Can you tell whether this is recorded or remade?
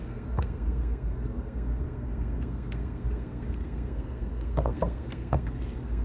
remade